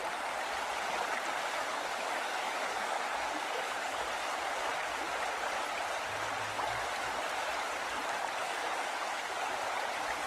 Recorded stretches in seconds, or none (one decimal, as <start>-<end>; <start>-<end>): 0.0-1.7; 4.0-8.4; 9.5-10.3